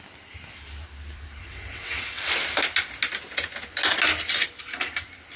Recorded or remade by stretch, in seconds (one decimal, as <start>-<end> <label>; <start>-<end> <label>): 0.0-1.4 recorded; 1.4-2.3 remade; 2.3-5.4 recorded